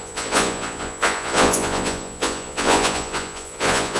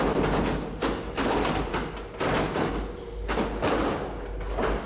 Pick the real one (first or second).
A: second